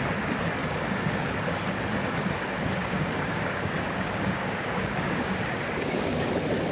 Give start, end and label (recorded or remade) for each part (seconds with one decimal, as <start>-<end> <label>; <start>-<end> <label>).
0.0-0.6 recorded; 0.6-1.3 remade; 1.3-2.8 recorded; 2.8-6.3 remade; 6.3-6.7 recorded